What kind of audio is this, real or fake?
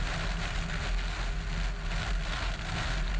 real